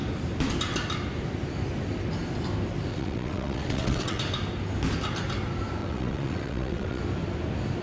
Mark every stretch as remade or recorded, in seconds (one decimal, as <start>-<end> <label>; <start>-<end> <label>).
0.0-2.9 recorded; 2.9-4.2 remade; 4.2-5.8 recorded; 5.8-7.0 remade; 7.0-7.8 recorded